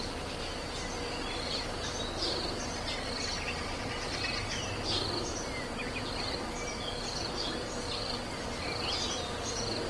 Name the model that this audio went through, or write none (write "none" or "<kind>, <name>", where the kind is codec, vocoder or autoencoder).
none